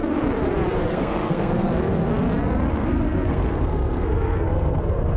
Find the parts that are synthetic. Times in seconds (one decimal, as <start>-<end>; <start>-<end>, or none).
0.9-2.1; 2.7-5.2